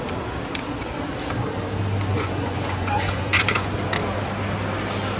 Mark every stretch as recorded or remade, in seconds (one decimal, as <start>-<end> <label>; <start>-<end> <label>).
0.0-2.1 recorded; 2.1-3.7 remade; 3.7-5.2 recorded